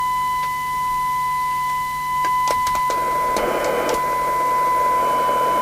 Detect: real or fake real